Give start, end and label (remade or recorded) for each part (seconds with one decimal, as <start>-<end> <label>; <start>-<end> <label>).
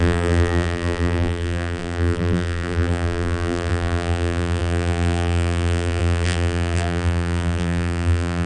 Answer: 0.0-8.5 remade